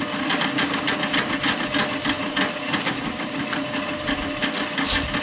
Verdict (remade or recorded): recorded